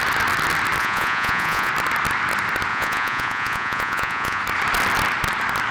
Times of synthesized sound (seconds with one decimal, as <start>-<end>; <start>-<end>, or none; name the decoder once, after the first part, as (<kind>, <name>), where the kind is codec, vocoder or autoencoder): 0.8-1.7 (vocoder, Vocos); 2.7-4.4